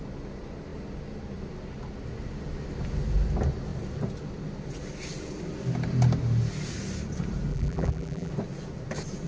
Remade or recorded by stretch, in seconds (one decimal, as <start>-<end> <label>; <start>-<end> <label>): 0.0-7.5 recorded; 7.5-8.3 remade; 8.3-9.3 recorded